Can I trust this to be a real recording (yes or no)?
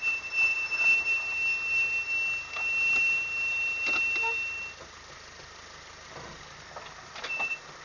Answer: yes